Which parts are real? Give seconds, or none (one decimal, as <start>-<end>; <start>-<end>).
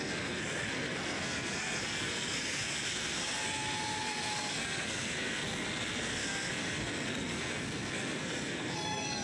none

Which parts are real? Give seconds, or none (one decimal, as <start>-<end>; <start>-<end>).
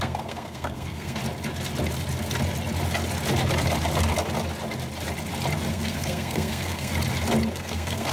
1.2-5.7; 6.9-7.5